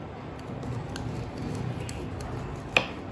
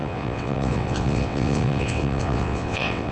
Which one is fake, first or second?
second